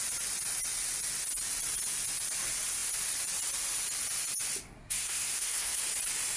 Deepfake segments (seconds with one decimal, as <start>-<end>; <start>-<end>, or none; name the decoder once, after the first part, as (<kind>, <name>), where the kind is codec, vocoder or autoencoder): 4.8-5.8 (codec, SNAC)